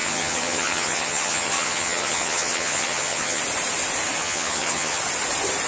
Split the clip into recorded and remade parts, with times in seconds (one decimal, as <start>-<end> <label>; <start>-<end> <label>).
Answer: 0.0-3.4 remade; 3.4-4.2 recorded; 4.2-5.0 remade; 5.0-5.7 recorded